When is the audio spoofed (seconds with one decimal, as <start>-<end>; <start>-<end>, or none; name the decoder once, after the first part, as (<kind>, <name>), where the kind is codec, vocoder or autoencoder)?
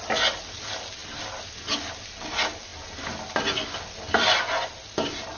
none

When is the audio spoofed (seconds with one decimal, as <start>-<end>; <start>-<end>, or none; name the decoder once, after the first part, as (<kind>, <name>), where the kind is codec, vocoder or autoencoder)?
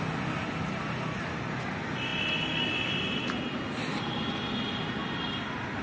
none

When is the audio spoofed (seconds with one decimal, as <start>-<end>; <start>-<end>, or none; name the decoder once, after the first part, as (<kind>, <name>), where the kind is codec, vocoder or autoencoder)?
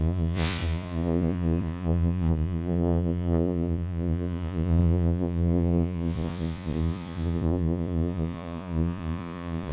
0.0-9.7 (vocoder, Vocos)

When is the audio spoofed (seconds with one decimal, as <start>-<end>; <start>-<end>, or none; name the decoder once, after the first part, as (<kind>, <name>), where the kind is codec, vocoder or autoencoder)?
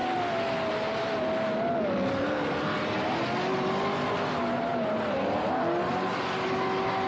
none